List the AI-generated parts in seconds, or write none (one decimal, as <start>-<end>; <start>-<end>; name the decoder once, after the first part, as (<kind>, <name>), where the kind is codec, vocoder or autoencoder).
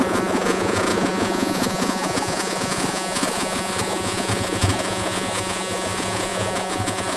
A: 0.0-7.2 (vocoder, Vocos)